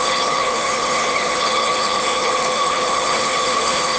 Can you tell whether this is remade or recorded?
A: remade